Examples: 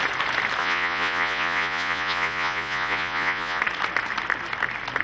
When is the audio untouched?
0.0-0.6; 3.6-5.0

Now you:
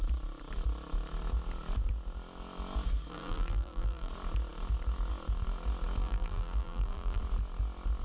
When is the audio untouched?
0.0-3.1; 4.1-6.0; 7.2-8.0

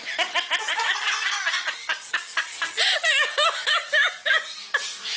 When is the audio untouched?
0.0-0.6; 2.7-3.1; 4.6-5.2